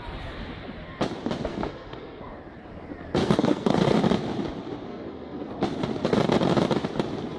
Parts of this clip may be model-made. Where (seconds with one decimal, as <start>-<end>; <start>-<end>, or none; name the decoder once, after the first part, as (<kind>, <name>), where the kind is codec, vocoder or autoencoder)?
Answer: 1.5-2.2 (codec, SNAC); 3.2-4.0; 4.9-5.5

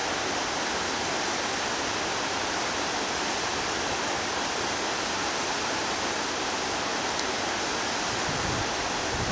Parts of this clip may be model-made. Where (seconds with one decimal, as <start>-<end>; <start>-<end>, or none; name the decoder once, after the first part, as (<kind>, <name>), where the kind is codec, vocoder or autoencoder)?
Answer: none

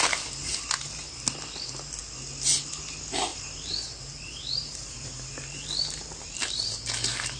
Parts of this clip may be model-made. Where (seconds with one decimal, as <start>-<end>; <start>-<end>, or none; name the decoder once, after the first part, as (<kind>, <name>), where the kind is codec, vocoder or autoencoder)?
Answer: 3.3-6.5 (vocoder, BigVGAN v2)

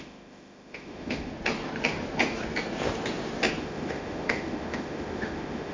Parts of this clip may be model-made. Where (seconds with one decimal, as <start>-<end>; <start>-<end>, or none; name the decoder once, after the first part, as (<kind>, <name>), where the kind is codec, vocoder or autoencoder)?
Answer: 0.0-1.3 (autoencoder, DAC-VAE); 3.6-5.7

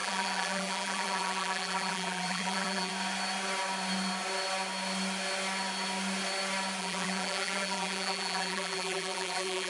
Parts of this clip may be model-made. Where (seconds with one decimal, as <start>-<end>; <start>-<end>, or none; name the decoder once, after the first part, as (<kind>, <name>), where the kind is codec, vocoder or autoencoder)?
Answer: 0.0-2.9 (vocoder, BigVGAN v2); 6.8-9.7